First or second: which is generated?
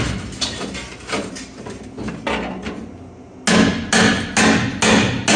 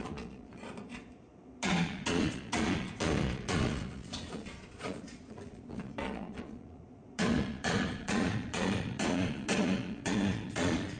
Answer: second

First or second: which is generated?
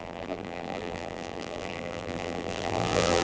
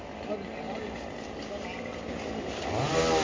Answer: first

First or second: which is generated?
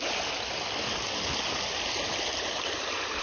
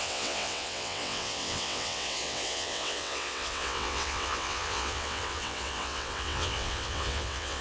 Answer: second